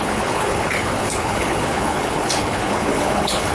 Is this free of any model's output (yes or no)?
no